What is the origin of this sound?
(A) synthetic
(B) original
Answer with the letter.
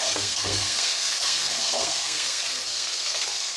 A